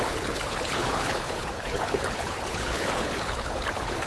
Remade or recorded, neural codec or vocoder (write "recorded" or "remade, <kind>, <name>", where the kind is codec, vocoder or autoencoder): remade, codec, HILCodec